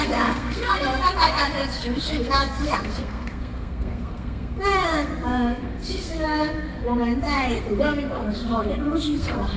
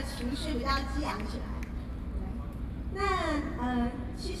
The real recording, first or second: second